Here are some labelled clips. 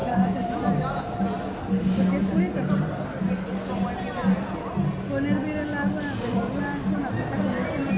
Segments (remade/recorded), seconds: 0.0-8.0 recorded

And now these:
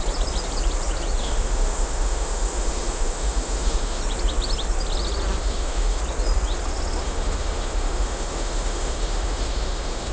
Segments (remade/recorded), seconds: 0.0-1.2 recorded; 1.2-4.0 remade; 4.0-5.4 recorded; 5.4-6.0 remade; 6.0-7.0 recorded; 7.0-10.1 remade

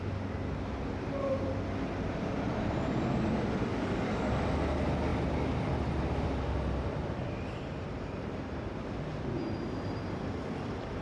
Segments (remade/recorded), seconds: 0.0-3.7 recorded; 3.7-4.3 remade; 4.3-11.0 recorded